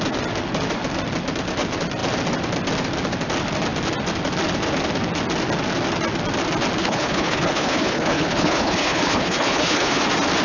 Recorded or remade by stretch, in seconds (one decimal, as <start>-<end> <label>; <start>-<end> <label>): 0.0-6.8 recorded; 6.8-10.0 remade; 10.0-10.4 recorded